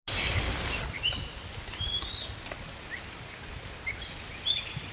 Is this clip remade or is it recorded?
recorded